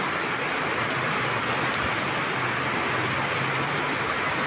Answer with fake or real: real